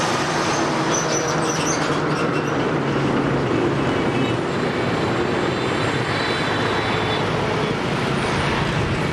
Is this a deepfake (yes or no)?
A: no